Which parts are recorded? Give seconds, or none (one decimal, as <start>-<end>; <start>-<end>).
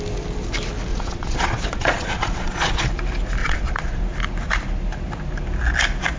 0.0-0.9; 2.9-3.4; 4.0-6.2